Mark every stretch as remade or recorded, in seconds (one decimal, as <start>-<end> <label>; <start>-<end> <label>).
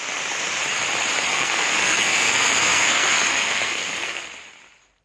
0.0-1.3 recorded; 1.3-4.3 remade; 4.3-5.0 recorded